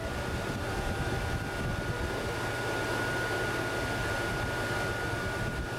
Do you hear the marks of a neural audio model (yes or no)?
no